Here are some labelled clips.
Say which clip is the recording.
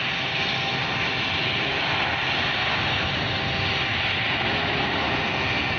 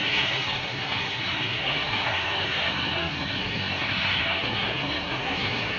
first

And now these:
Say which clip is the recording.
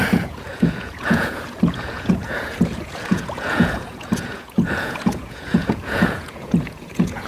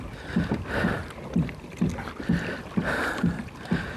second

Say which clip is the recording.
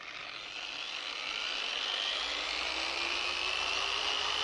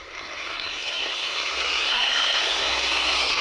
first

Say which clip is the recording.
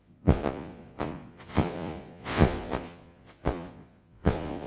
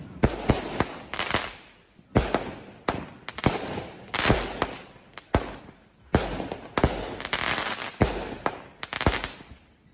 second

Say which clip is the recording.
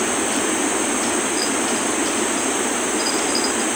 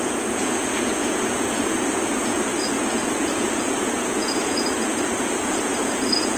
first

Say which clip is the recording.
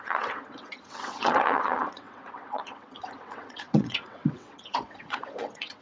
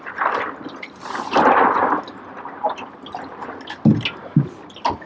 second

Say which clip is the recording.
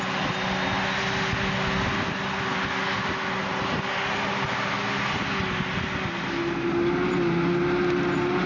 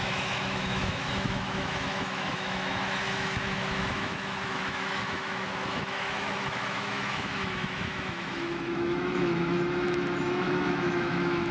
first